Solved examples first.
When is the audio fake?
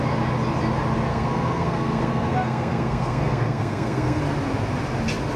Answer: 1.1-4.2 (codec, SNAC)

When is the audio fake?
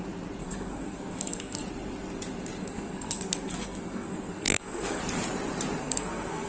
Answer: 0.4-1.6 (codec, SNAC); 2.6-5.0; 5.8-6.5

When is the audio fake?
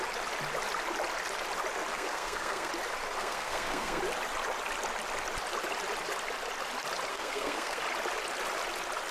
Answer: 1.9-2.7 (codec, SNAC); 3.2-4.0; 7.1-7.8